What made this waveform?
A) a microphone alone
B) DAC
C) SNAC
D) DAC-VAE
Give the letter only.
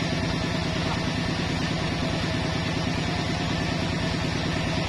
A